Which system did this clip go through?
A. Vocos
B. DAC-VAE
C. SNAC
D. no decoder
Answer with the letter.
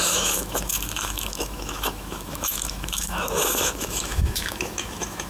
B